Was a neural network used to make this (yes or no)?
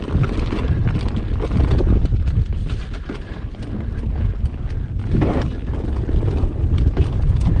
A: no